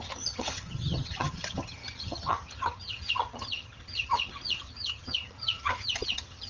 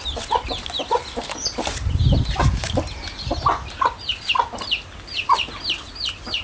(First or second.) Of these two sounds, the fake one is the first